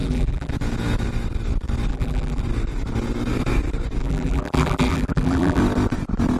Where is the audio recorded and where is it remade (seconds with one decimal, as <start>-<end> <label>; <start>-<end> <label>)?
0.0-0.5 remade; 0.5-1.9 recorded; 1.9-2.4 remade; 2.4-4.0 recorded; 4.0-5.6 remade; 5.6-6.4 recorded